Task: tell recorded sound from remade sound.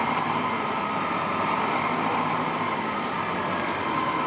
remade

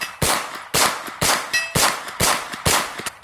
recorded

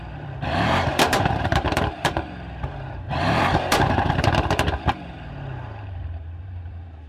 remade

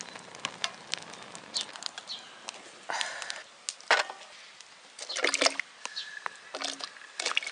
recorded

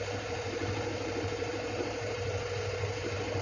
remade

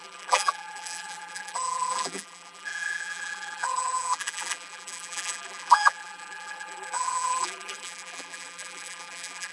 remade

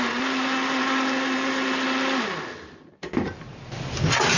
recorded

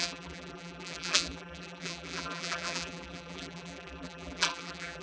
remade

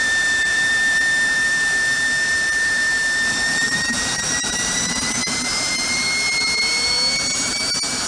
remade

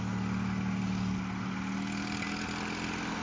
recorded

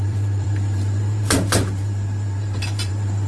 remade